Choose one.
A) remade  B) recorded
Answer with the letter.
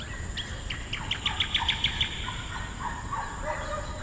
B